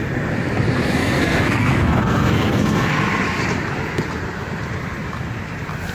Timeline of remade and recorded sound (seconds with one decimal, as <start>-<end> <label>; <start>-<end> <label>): 0.0-1.0 recorded; 1.0-3.0 remade; 3.0-5.9 recorded